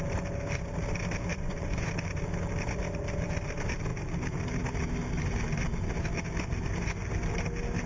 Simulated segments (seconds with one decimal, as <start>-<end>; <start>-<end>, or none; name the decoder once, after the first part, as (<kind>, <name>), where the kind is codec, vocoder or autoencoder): 1.3-1.9 (vocoder, Vocos)